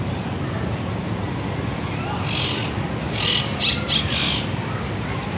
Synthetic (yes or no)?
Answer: no